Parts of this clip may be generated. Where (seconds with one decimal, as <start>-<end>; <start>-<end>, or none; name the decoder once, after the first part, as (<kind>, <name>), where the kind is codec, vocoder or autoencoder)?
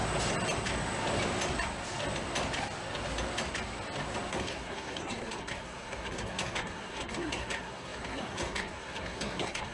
4.3-9.7 (codec, SNAC)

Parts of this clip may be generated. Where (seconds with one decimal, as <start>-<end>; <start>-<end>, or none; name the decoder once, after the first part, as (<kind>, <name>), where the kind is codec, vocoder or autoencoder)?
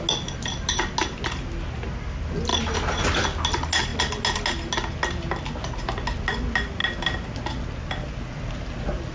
none